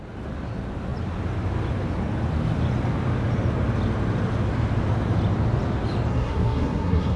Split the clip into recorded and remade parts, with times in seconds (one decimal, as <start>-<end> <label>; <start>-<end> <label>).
0.0-6.1 recorded; 6.1-7.2 remade